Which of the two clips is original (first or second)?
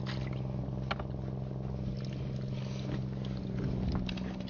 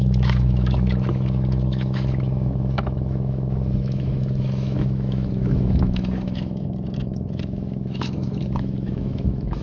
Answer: first